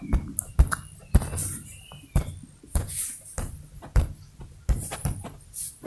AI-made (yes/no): no